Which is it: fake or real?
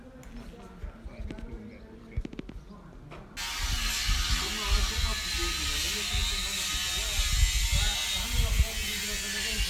real